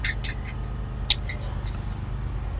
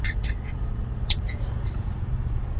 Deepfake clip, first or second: second